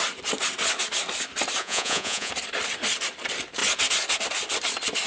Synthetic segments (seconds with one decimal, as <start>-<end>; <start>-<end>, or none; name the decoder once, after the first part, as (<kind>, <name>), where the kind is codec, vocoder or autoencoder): 1.6-2.3 (vocoder, Vocos)